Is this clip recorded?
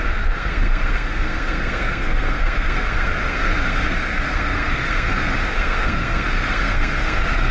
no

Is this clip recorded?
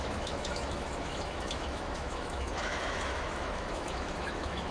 no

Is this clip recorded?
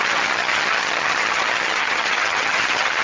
no